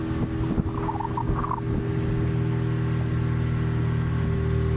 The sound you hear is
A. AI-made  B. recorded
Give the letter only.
B